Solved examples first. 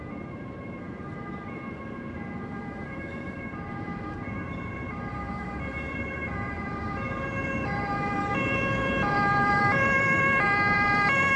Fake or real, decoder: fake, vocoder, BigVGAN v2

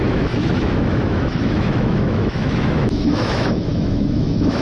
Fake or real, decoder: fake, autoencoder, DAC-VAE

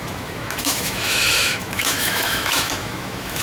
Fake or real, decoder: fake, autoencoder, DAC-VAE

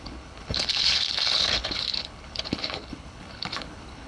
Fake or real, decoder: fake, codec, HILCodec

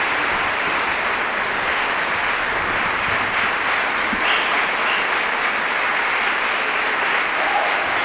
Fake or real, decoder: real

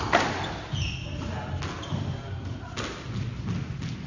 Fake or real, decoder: real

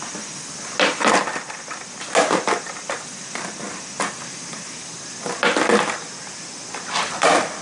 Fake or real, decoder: real